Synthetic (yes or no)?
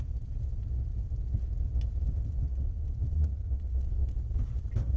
no